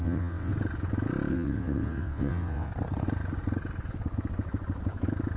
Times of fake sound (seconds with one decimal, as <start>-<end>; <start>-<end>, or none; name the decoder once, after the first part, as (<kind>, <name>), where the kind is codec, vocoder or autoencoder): 0.0-0.5 (vocoder, WaveNeXt); 1.3-2.7